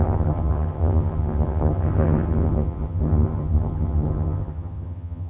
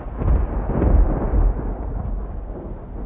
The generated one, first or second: first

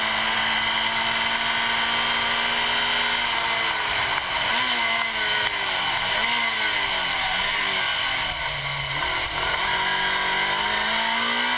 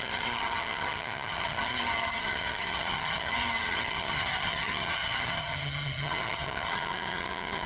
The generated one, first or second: second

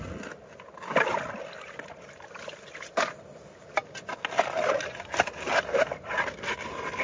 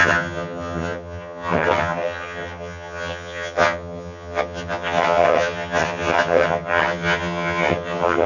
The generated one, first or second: second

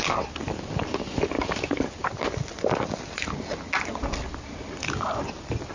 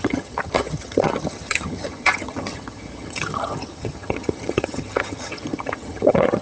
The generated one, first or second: second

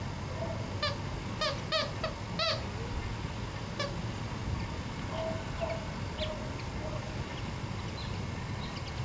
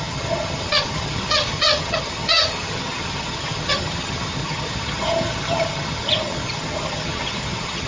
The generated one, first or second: second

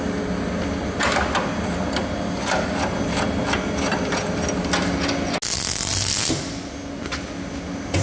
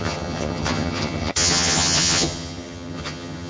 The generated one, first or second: second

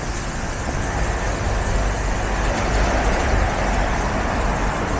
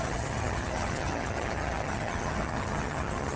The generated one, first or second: second